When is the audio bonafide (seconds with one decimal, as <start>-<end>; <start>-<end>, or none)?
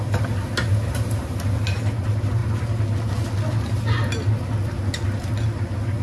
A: 0.0-6.0